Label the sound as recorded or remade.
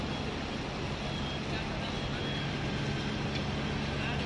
recorded